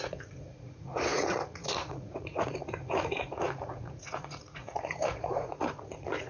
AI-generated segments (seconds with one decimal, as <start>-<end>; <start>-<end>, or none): 0.0-6.3